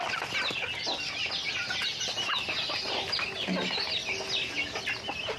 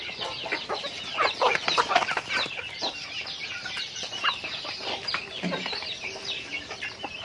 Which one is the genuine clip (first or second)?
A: first